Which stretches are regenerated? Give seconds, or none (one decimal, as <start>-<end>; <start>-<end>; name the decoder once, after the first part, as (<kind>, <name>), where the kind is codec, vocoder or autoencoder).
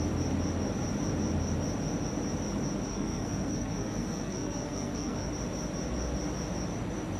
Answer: 2.9-5.3 (codec, SNAC)